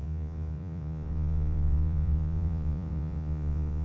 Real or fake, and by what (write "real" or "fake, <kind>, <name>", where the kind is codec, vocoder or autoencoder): fake, vocoder, Vocos